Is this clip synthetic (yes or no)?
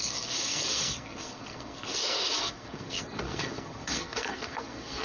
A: yes